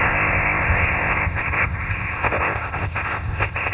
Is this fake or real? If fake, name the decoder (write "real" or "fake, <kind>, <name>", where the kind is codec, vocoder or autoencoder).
fake, codec, ZipCodec